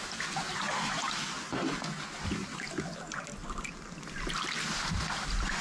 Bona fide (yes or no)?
yes